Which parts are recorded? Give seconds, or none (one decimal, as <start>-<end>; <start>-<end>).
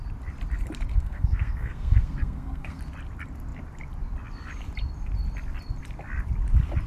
0.0-0.9; 2.8-6.9